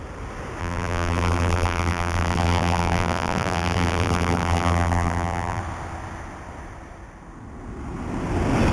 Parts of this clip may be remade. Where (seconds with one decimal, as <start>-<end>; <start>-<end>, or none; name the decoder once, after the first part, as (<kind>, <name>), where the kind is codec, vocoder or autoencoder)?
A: 0.6-5.6 (vocoder, BigVGAN v2)

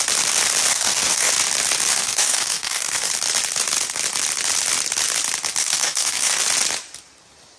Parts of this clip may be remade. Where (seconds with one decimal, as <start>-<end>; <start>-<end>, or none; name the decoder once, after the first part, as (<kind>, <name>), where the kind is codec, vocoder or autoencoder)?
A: 0.7-1.3 (codec, DAC); 1.9-3.1; 5.6-6.4

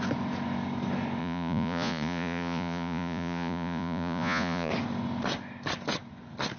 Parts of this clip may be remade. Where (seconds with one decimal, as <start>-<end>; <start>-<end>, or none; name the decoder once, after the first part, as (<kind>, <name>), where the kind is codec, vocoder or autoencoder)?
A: 1.2-4.7 (vocoder, Vocos)

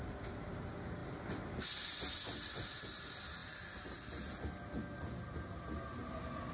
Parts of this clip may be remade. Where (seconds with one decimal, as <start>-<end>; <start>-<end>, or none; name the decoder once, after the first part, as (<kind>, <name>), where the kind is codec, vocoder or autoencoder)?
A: 1.0-2.8 (vocoder, BigVGAN v2)

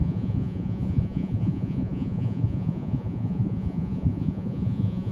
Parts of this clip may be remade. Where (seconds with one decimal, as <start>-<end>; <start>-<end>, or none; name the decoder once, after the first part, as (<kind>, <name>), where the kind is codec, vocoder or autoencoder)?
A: 0.0-5.1 (vocoder, Vocos)

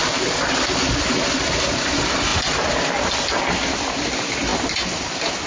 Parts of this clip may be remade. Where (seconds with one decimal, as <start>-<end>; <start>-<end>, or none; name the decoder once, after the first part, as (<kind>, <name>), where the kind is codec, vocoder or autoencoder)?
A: none

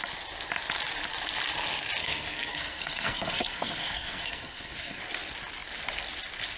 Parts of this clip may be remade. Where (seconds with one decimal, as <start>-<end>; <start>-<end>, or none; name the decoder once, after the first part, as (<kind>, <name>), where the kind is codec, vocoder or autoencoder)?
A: 2.0-5.0 (codec, SNAC)